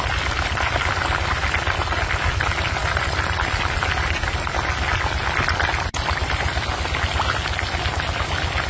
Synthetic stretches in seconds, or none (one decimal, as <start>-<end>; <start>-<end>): none